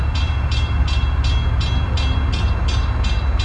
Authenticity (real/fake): real